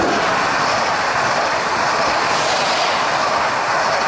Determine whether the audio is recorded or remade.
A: recorded